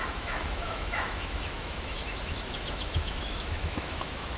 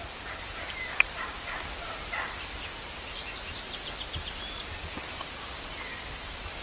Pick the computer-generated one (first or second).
first